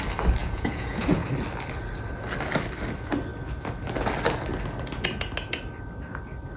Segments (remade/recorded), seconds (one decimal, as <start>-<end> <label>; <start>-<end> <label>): 0.0-0.4 recorded; 0.4-1.3 remade; 1.3-6.6 recorded